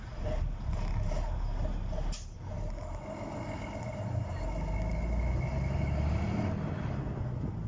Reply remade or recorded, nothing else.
recorded